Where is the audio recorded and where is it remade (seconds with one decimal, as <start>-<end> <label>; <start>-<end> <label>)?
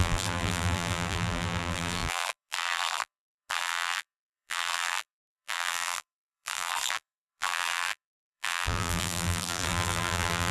0.0-10.5 remade